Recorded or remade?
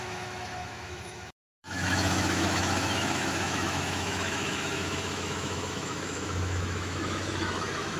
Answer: remade